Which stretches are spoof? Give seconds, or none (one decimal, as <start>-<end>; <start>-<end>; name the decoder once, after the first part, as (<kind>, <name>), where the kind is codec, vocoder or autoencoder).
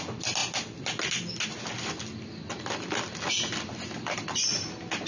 none